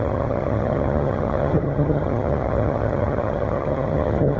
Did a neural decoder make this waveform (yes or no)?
yes